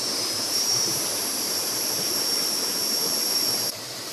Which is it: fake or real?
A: fake